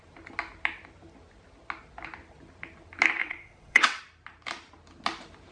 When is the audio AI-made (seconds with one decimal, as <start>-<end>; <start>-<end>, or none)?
3.2-4.0